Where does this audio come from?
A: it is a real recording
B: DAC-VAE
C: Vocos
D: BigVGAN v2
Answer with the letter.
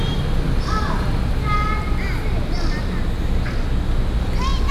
A